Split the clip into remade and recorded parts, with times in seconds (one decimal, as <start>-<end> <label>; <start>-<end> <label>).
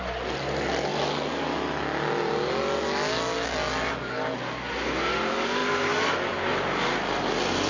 0.0-7.7 recorded